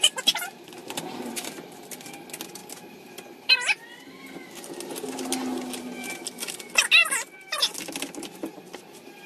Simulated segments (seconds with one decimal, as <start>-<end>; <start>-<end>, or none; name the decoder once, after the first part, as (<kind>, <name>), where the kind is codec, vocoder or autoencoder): none